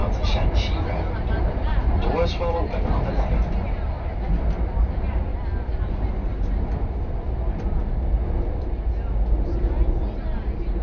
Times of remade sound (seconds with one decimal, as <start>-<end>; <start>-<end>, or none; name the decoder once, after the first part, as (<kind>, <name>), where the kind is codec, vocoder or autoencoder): none